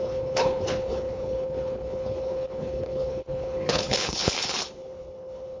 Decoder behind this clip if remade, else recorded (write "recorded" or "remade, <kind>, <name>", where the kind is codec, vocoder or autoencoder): remade, codec, HILCodec